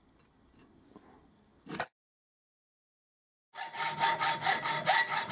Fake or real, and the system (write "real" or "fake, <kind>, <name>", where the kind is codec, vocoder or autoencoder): real